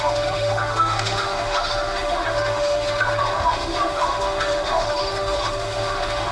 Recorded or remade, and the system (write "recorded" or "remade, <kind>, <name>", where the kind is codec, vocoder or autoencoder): remade, autoencoder, DAC-VAE